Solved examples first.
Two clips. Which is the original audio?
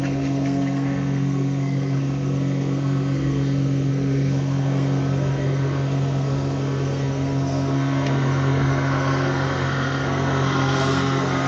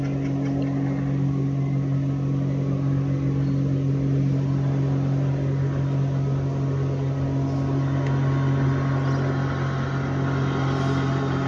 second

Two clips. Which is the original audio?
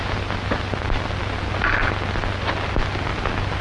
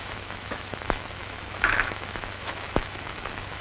first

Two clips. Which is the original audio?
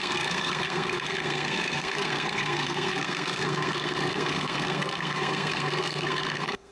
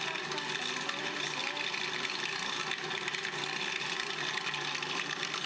second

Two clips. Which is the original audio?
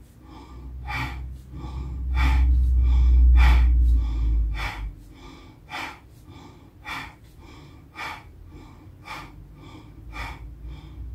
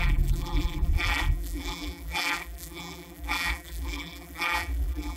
first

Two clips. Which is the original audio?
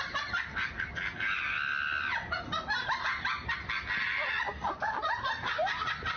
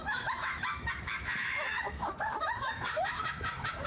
first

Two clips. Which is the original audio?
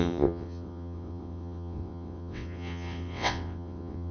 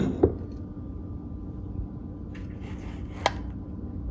second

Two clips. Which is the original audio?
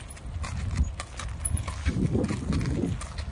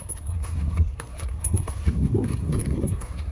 first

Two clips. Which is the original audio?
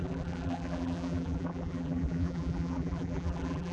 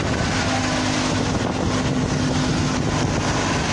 second